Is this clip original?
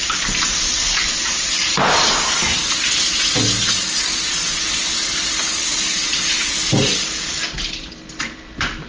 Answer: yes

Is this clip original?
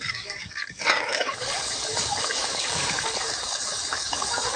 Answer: no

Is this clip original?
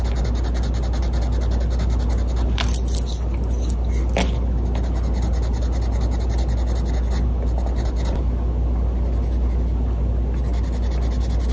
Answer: yes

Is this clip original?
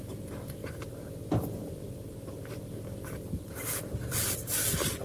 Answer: no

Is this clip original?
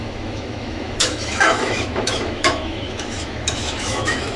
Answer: no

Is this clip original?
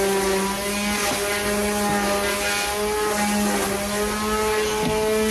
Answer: yes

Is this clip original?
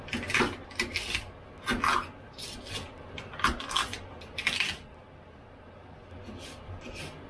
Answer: yes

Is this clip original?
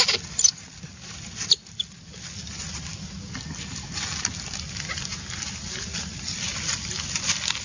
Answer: yes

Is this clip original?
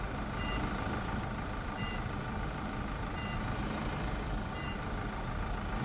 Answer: no